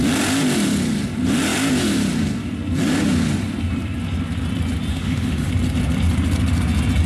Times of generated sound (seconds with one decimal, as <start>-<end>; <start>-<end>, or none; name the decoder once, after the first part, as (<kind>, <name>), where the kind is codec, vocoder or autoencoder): 4.9-5.5 (autoencoder, DAC-VAE)